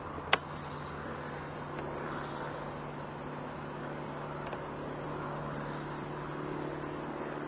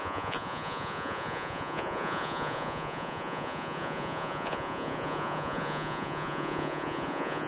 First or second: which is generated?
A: second